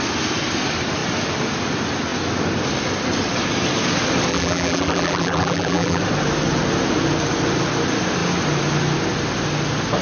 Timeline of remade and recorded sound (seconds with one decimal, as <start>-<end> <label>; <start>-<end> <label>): 0.0-4.3 recorded; 4.3-6.0 remade; 6.0-10.0 recorded